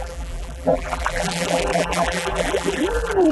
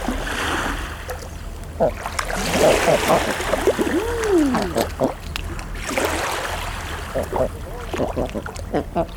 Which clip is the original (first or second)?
second